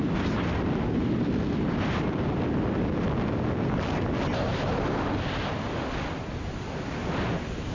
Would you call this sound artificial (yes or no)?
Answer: no